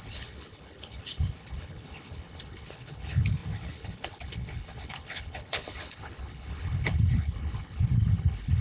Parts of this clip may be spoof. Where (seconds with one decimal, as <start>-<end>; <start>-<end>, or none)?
0.0-8.6